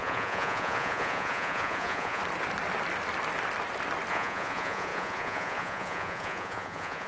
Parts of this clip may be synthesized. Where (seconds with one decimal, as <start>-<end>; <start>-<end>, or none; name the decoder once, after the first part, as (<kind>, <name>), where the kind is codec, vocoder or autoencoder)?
0.0-2.2 (vocoder, Vocos); 4.1-7.1